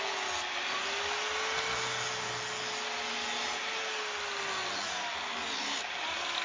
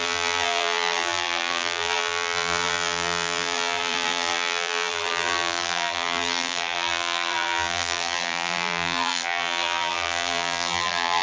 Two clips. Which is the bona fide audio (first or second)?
first